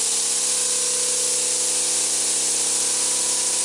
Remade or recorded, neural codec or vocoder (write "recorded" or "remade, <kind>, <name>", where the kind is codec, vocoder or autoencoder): recorded